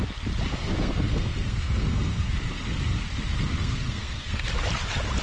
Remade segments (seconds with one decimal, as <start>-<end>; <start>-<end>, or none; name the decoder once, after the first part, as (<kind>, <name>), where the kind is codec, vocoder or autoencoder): 0.6-2.3 (codec, SNAC); 3.6-4.5